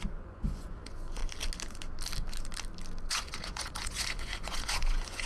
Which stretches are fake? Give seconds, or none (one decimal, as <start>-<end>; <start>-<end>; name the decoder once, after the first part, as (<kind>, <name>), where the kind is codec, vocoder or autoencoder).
0.0-1.2 (vocoder, Vocos); 3.1-5.3